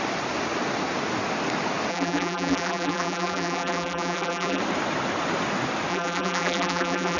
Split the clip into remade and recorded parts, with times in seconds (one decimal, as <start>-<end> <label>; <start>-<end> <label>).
0.0-1.9 recorded; 1.9-4.6 remade; 4.6-5.9 recorded; 5.9-7.2 remade